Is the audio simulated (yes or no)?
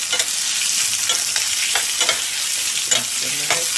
no